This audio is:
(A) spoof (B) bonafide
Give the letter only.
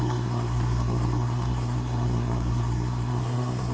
A